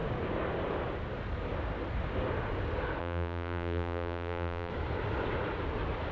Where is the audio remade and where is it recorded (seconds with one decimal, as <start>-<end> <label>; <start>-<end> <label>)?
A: 0.0-3.0 recorded; 3.0-4.7 remade; 4.7-6.1 recorded